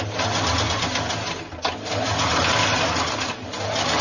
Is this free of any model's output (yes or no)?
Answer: yes